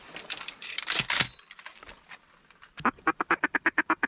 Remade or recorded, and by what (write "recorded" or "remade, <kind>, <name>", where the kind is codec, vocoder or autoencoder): recorded